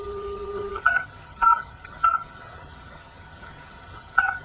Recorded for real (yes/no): no